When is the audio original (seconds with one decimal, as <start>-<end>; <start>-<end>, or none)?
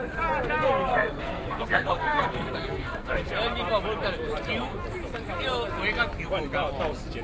0.0-0.9; 3.3-7.2